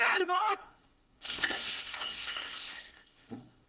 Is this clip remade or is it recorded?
remade